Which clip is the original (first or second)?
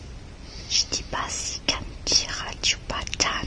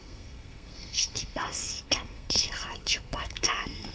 first